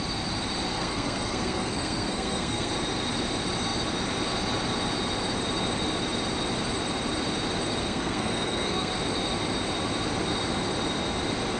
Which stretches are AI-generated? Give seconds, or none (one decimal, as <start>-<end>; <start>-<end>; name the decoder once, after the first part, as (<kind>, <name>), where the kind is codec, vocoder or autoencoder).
0.7-2.7 (codec, SNAC); 7.8-8.9